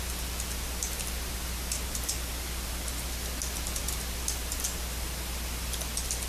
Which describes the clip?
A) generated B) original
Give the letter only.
B